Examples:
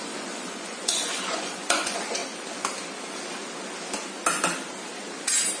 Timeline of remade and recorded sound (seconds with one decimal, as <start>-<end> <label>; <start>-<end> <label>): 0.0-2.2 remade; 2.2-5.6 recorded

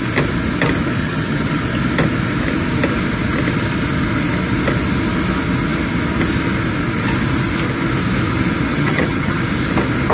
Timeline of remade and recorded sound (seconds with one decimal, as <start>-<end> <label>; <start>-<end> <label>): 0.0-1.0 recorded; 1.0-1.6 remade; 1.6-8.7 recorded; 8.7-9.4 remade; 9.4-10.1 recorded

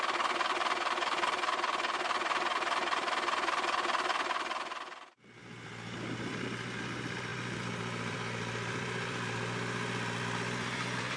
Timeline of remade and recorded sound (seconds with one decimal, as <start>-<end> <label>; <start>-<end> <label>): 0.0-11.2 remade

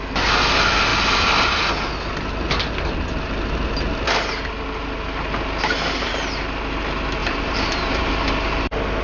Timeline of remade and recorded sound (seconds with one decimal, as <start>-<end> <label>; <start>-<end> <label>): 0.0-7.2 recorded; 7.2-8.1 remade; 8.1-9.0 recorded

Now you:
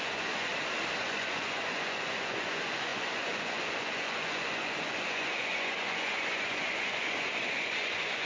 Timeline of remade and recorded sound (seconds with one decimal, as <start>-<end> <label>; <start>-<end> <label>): 0.0-0.5 remade; 0.5-1.0 recorded; 1.0-8.3 remade

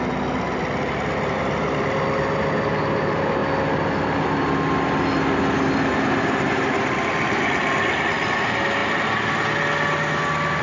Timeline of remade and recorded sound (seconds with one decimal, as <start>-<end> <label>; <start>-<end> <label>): 0.0-10.6 recorded